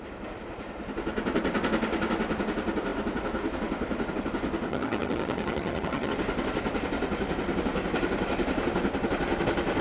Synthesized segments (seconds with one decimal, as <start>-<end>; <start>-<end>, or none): 4.7-6.1